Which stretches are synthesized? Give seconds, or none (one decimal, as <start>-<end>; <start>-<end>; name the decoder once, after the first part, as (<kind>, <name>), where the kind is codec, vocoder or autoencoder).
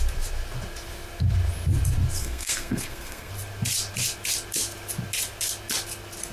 2.2-3.3 (codec, SNAC)